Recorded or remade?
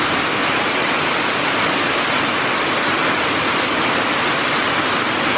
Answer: recorded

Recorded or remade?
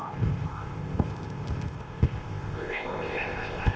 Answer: remade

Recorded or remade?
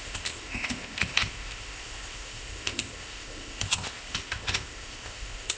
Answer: remade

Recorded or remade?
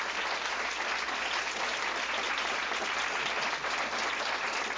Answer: recorded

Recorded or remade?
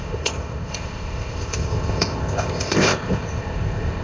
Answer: remade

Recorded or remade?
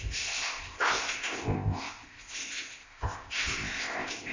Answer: remade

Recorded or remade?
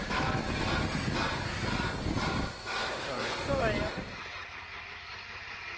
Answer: recorded